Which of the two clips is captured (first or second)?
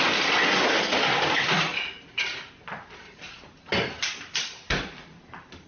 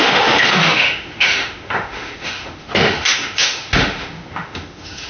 first